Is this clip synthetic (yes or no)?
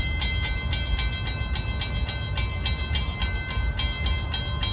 no